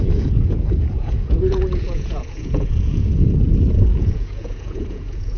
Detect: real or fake fake